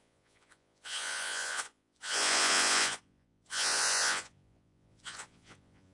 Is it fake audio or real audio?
fake